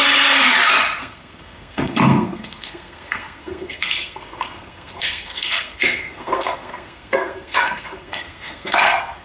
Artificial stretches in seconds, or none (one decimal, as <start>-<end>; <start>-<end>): 1.0-9.2